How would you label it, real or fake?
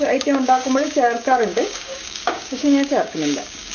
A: fake